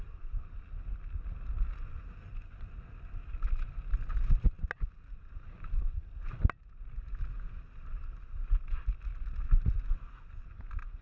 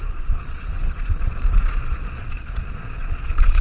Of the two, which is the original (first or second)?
first